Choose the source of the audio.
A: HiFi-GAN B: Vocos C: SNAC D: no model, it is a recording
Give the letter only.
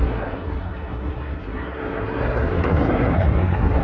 C